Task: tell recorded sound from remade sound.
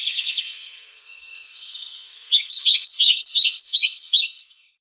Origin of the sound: remade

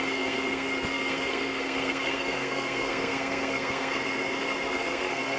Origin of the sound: remade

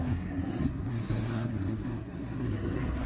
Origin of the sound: remade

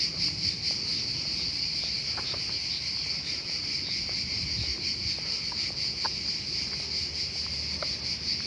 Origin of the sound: recorded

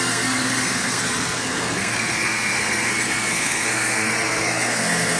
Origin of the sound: remade